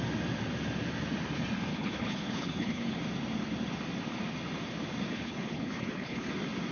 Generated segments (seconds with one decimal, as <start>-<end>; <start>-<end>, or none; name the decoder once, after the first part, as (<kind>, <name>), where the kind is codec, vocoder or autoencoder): 1.7-3.0 (codec, HILCodec); 5.1-6.3